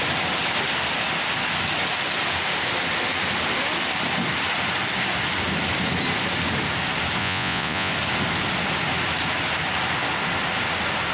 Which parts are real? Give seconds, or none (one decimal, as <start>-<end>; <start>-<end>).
0.0-7.2; 7.9-11.1